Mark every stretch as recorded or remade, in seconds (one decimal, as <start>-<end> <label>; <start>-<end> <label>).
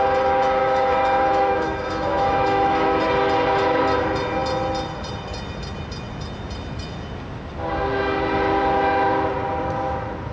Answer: 0.0-0.6 recorded; 0.6-3.0 remade; 3.0-10.3 recorded